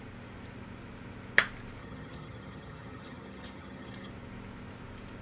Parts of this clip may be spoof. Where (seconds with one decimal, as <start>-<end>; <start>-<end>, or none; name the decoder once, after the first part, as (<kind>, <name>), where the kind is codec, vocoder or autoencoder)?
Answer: 1.8-4.1 (vocoder, HiFi-GAN)

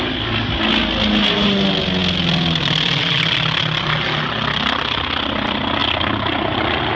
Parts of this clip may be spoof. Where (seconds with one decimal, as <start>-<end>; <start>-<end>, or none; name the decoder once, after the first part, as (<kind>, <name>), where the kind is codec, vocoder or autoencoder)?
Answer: none

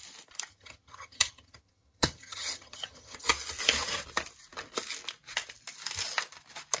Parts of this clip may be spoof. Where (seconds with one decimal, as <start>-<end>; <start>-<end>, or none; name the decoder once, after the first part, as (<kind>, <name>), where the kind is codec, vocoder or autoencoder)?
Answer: 0.5-3.3 (vocoder, HiFi-GAN)

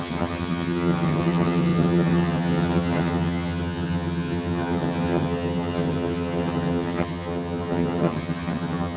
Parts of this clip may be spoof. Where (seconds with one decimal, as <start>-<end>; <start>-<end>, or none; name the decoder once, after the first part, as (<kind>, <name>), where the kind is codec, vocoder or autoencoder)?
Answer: 0.0-9.0 (vocoder, HiFi-GAN)

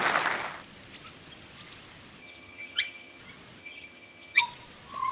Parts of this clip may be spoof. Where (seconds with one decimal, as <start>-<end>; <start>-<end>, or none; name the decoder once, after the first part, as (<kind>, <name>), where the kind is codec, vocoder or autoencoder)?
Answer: 2.2-3.2 (vocoder, HiFi-GAN); 3.6-4.4